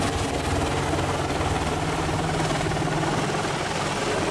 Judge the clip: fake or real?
real